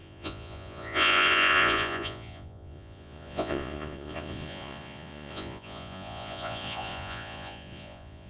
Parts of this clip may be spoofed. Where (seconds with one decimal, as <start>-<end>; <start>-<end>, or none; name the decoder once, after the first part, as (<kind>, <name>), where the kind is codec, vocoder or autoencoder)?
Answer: 0.0-8.3 (vocoder, Vocos)